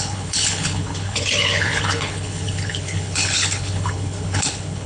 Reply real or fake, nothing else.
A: fake